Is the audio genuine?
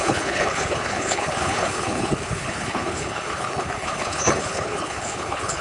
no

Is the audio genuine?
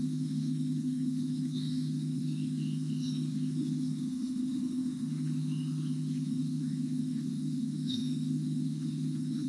no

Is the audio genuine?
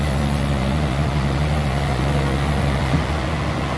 no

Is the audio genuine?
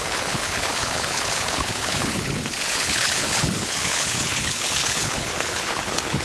no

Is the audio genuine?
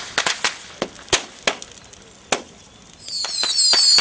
yes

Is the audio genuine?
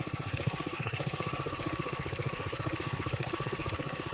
no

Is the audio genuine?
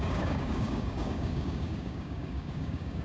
no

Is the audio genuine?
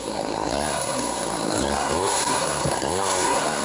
no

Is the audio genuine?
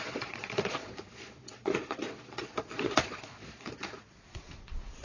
no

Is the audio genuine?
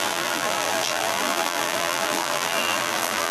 no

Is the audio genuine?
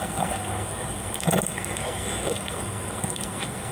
no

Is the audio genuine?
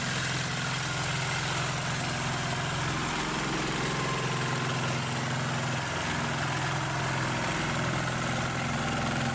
yes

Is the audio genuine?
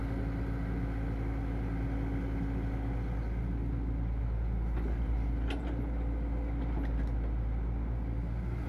yes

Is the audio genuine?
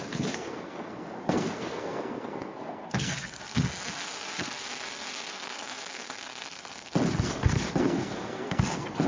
no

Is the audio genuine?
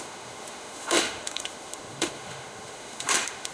no